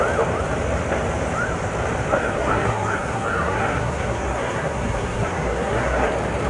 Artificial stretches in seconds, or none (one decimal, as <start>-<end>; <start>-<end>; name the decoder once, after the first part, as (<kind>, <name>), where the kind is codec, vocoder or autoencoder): 2.2-6.1 (codec, SNAC)

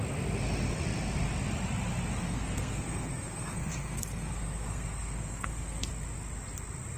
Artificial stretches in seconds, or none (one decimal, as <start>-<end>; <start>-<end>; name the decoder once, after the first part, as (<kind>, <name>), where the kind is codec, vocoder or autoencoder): 2.2-5.9 (codec, SNAC)

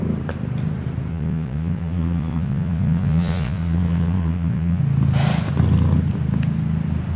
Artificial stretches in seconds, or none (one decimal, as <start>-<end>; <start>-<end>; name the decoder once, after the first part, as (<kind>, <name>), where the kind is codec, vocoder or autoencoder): 1.1-4.8 (vocoder, Vocos)

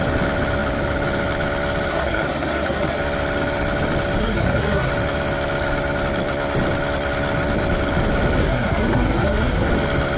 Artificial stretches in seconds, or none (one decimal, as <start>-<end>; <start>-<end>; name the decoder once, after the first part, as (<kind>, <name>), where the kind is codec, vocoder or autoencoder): 1.9-3.0 (codec, SNAC); 4.2-4.9; 8.4-9.7

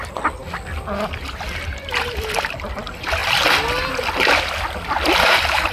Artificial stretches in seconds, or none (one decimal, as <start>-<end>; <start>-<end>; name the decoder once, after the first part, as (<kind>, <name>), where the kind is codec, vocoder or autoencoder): none